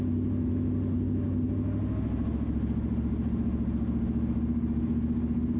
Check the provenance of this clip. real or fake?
real